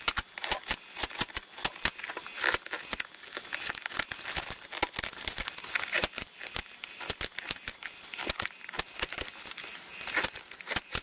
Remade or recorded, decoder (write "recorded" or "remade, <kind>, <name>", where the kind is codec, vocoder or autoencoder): recorded